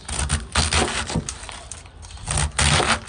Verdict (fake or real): real